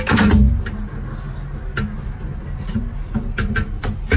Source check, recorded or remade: recorded